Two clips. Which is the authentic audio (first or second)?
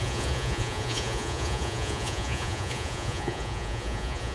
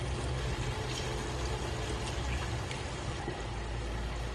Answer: second